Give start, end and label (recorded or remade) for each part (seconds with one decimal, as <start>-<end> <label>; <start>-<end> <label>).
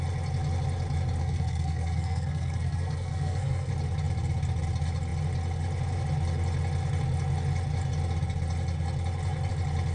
0.0-1.2 recorded; 1.2-3.7 remade; 3.7-9.9 recorded